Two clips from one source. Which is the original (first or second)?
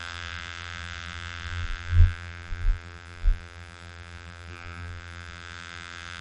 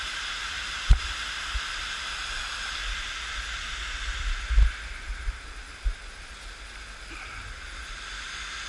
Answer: second